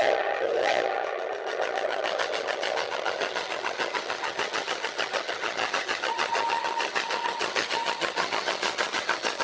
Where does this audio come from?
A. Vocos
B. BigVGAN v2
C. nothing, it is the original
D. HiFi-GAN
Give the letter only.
D